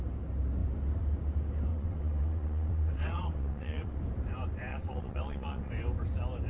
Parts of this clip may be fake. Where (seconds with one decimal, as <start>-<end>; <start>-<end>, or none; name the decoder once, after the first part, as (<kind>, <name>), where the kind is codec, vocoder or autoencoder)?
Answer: 1.7-4.0 (vocoder, WaveNeXt); 4.7-5.7